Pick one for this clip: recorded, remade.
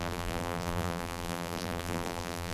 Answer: remade